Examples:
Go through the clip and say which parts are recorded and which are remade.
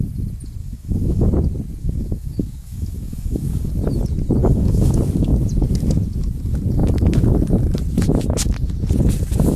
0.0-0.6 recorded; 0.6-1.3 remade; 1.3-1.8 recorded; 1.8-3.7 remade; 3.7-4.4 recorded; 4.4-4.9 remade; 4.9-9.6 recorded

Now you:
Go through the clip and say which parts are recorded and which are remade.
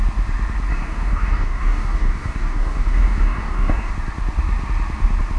0.0-0.7 recorded; 0.7-3.9 remade; 3.9-5.4 recorded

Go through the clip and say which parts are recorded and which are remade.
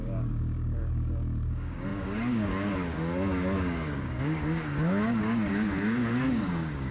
0.0-6.9 remade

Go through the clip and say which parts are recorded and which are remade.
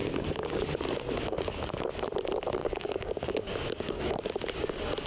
0.0-1.9 remade; 1.9-2.6 recorded; 2.6-4.2 remade; 4.2-5.1 recorded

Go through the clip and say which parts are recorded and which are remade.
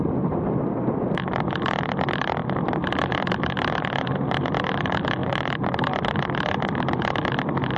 0.0-7.8 recorded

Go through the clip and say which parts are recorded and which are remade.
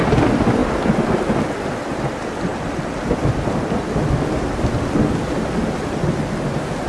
0.0-6.9 recorded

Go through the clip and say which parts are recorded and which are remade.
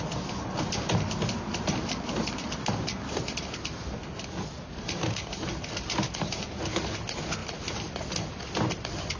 0.0-9.2 recorded